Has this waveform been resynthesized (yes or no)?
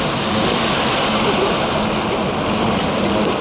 no